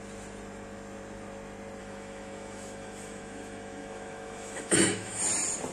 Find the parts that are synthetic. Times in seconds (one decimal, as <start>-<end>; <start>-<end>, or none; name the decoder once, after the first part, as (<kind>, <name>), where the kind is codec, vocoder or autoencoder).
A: 1.8-5.2 (autoencoder, DAC-VAE)